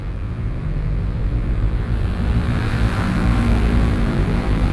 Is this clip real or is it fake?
fake